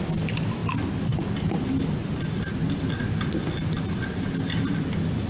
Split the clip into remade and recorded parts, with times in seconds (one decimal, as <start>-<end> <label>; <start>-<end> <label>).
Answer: 0.0-5.3 recorded